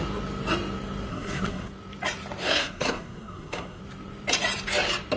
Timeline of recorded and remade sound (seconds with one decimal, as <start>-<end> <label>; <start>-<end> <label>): 0.0-1.1 recorded; 1.1-1.7 remade; 1.7-2.4 recorded; 2.4-3.8 remade; 3.8-5.2 recorded